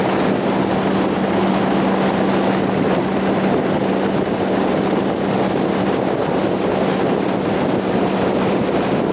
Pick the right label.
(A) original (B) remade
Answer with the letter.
A